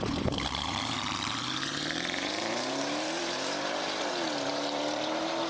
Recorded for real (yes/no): no